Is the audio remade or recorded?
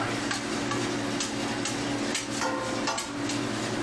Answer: recorded